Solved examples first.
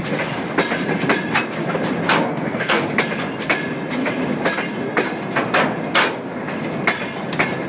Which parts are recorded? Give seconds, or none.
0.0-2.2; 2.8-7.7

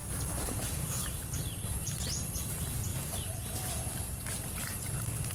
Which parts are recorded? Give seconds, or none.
2.5-2.9; 4.6-5.3

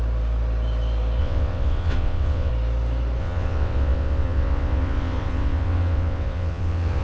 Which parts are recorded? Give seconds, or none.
0.0-1.2; 2.5-3.2

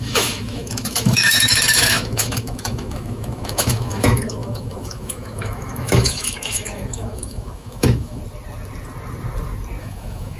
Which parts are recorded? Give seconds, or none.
8.2-9.8